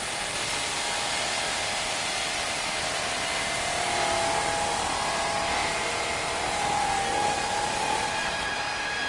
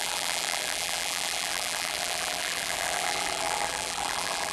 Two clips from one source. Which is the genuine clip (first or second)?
first